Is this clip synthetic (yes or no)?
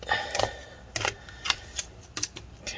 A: no